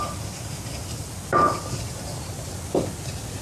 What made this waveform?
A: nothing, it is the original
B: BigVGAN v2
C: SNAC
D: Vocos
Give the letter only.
A